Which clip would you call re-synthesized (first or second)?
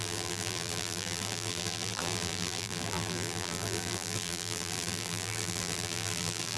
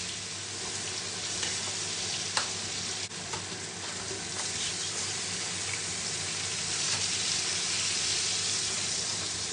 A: first